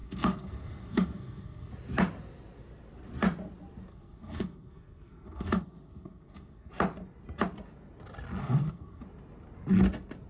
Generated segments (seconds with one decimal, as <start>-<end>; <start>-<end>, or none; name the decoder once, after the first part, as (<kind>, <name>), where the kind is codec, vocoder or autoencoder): 0.0-1.7 (codec, SNAC); 3.9-6.7; 8.4-9.0